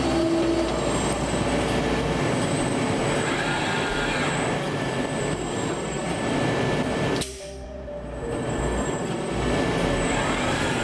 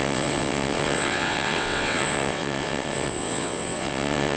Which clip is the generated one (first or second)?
second